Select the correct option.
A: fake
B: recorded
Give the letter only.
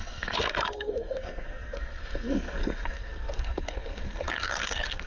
A